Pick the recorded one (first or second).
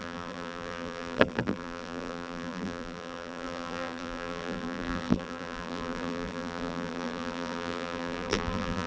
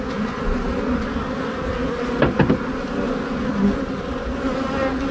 second